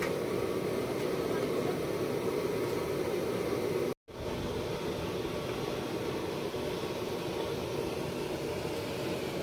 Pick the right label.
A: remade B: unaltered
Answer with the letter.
B